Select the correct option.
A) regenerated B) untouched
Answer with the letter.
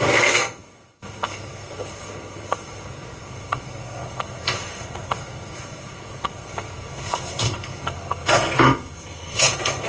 A